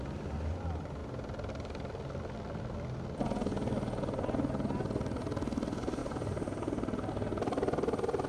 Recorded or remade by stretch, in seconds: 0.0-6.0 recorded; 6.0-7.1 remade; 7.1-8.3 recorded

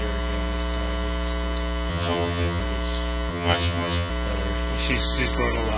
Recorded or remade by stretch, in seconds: 0.0-1.9 recorded; 1.9-2.6 remade; 2.6-3.3 recorded; 3.3-4.1 remade; 4.1-5.8 recorded

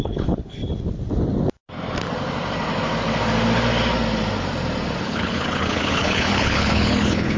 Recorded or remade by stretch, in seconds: 0.0-0.6 remade; 0.6-5.0 recorded; 5.0-7.4 remade

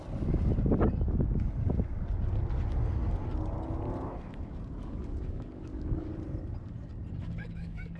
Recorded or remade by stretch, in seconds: 0.0-4.8 recorded; 4.8-6.1 remade; 6.1-7.2 recorded; 7.2-8.0 remade